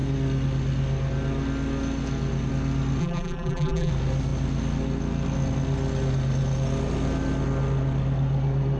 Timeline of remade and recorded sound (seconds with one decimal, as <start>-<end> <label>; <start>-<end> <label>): 0.0-3.0 recorded; 3.0-3.9 remade; 3.9-8.8 recorded